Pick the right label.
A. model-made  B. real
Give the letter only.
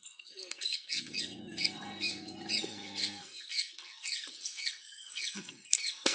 A